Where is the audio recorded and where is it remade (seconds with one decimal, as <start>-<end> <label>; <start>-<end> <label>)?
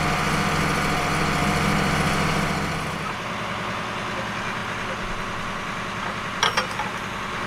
0.0-7.5 recorded